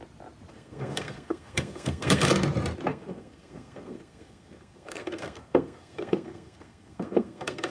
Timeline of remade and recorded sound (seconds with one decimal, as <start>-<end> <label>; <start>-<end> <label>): 0.0-0.5 recorded; 0.5-2.3 remade; 2.3-2.9 recorded; 2.9-7.7 remade